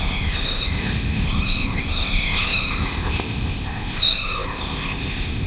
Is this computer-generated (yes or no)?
yes